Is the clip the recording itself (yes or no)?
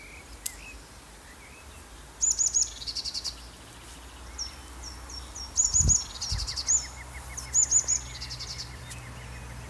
yes